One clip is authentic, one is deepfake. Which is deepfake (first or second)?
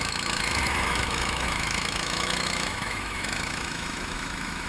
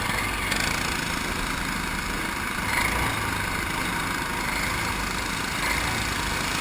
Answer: first